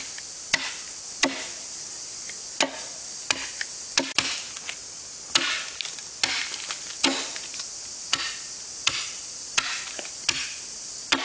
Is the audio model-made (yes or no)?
no